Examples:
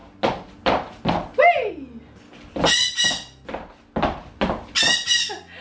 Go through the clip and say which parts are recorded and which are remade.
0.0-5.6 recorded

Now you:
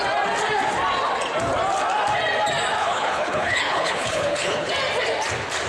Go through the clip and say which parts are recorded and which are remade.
0.0-2.8 recorded; 2.8-4.7 remade; 4.7-5.7 recorded

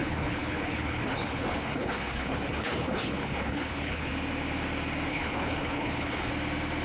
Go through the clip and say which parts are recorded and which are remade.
0.0-4.1 remade; 4.1-5.1 recorded; 5.1-6.3 remade; 6.3-6.8 recorded

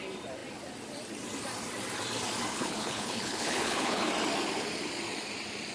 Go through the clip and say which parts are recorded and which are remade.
0.0-2.5 recorded; 2.5-4.1 remade; 4.1-5.7 recorded

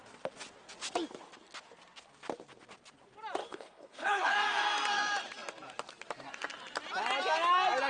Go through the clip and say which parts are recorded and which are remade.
0.0-3.4 recorded; 3.4-4.3 remade; 4.3-7.9 recorded

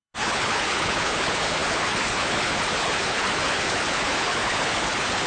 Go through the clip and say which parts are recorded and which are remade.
0.0-5.3 remade